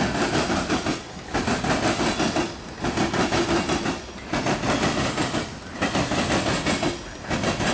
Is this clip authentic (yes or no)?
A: yes